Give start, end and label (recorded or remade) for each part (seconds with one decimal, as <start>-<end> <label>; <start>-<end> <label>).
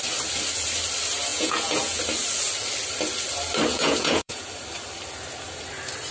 0.0-1.3 recorded; 1.3-2.0 remade; 2.0-3.7 recorded; 3.7-4.5 remade; 4.5-6.1 recorded